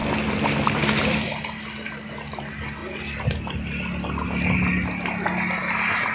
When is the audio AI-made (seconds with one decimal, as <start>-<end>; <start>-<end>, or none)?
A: none